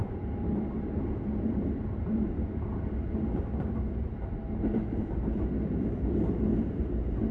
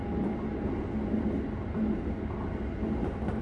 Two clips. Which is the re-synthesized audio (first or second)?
first